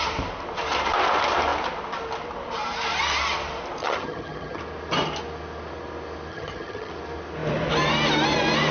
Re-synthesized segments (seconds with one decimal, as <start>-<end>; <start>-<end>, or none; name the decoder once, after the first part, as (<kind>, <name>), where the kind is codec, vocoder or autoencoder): 3.8-4.6 (vocoder, HiFi-GAN); 6.3-6.9